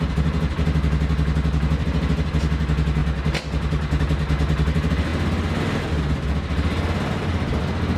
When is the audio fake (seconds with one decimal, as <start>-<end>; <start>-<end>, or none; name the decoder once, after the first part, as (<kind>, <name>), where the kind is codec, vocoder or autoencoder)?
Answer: none

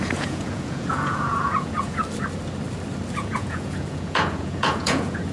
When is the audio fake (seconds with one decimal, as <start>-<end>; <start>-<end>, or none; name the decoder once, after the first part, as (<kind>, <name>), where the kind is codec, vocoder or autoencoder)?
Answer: 0.0-2.0 (vocoder, Vocos); 3.2-5.3

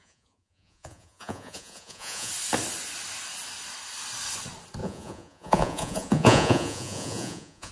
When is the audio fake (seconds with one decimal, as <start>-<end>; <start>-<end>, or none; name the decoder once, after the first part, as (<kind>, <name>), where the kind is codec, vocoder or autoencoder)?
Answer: 0.0-2.3 (vocoder, Vocos); 4.8-7.7

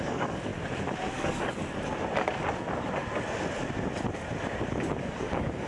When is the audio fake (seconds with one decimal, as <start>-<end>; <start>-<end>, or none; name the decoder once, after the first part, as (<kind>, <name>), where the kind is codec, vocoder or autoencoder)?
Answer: 0.0-0.5 (codec, DAC); 1.1-1.6; 5.0-5.7

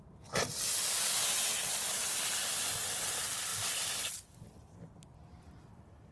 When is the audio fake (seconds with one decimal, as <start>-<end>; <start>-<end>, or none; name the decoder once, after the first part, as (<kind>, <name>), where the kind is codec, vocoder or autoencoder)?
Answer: none